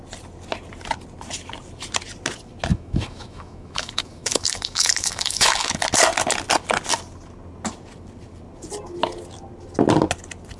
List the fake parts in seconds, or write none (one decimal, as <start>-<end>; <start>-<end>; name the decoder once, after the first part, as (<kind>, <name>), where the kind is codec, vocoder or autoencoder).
2.7-5.8 (autoencoder, DAC-VAE)